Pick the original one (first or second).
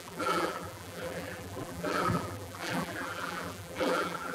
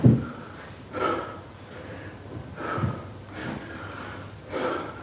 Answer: second